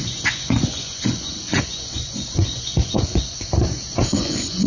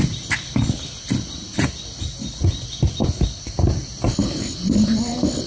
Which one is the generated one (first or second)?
first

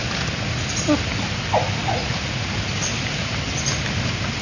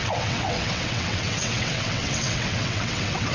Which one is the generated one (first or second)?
second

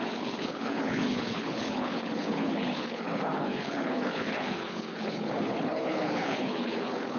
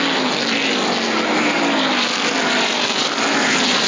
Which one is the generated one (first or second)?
first